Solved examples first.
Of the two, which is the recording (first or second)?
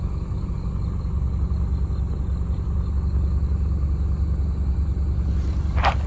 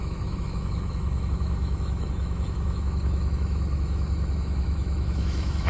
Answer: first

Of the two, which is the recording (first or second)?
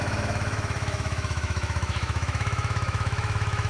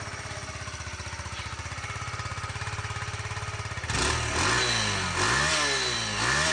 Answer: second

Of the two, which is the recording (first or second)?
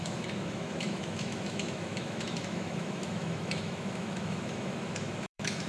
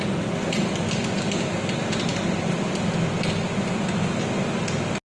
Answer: second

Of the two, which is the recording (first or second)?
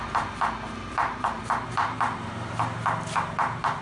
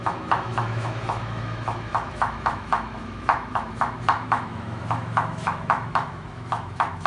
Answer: first